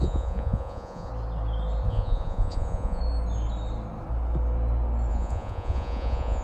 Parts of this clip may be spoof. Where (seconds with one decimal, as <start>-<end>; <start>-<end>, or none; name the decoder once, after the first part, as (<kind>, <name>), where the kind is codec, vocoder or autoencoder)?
0.0-1.1 (vocoder, Vocos); 1.9-3.0; 5.1-6.4